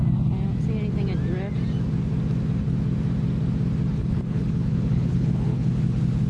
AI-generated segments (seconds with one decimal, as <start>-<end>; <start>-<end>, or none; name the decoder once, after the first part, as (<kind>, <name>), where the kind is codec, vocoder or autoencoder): 3.9-5.7 (codec, HILCodec)